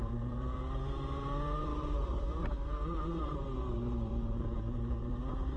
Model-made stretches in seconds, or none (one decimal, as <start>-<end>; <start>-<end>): 0.0-5.6